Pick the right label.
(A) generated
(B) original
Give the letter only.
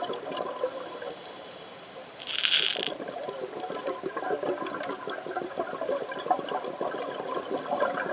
B